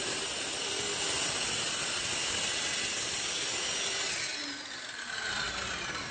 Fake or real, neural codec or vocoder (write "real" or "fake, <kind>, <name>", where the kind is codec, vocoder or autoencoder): real